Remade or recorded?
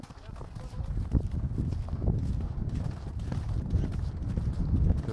recorded